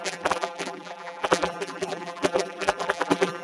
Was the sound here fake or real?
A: fake